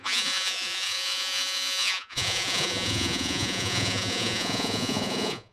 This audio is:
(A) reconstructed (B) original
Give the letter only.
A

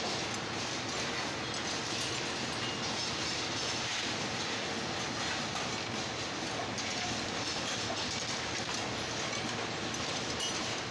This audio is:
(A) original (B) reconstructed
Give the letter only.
A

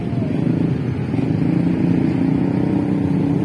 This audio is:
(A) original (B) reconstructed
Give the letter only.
A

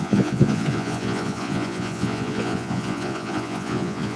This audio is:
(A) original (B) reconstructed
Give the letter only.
B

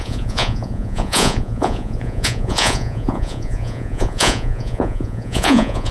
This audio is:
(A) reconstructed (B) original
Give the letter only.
A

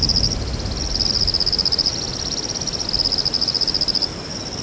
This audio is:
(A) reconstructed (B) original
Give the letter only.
B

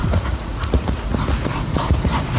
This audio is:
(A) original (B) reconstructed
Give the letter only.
B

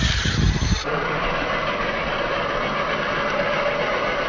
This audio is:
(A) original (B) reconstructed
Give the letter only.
A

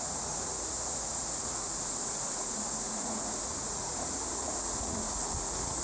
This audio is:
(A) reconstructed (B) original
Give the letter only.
A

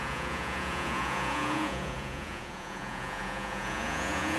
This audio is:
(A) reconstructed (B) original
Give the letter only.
A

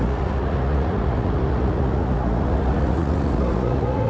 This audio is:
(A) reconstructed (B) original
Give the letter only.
A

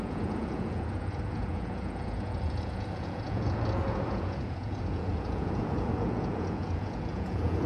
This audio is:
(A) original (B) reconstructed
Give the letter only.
B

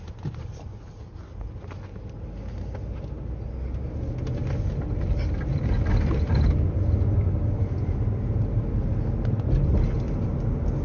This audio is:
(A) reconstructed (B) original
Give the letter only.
B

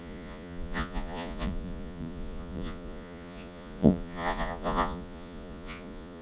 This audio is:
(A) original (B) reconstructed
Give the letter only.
B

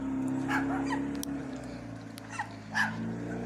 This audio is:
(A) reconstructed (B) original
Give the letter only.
B